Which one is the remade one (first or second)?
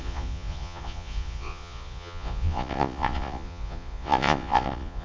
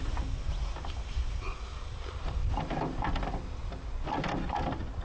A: first